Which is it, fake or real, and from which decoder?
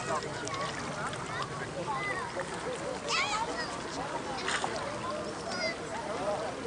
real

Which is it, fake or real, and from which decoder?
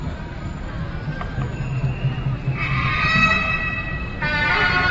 real